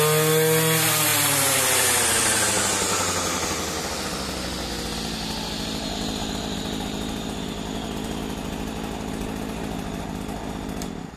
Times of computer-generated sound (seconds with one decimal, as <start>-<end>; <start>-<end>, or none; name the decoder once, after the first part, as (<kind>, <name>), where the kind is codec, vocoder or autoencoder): none